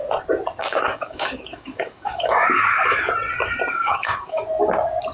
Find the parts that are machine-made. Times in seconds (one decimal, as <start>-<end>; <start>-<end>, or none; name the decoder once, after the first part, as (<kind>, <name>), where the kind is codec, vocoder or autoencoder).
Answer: 0.6-3.1 (codec, DAC); 3.7-4.4